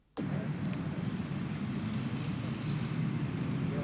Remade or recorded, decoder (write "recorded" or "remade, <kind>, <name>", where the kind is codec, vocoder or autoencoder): recorded